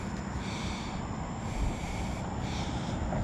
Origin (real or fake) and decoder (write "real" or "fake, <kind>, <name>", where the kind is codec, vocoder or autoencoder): real